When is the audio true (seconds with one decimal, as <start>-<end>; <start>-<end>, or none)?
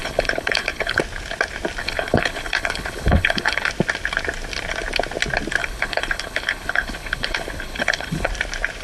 1.0-1.8; 3.7-5.6; 8.3-8.8